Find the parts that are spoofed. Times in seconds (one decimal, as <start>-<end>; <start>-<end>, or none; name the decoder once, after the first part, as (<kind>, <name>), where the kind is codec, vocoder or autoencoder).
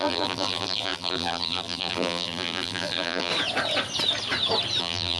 0.0-3.3 (vocoder, BigVGAN v2); 4.8-5.2